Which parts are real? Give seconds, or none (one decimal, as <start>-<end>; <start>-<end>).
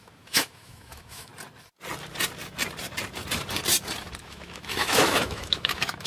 1.3-4.2